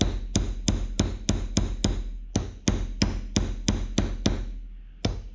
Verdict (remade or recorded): recorded